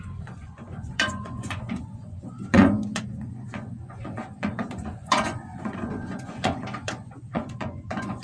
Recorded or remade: remade